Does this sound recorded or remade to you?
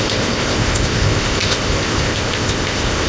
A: remade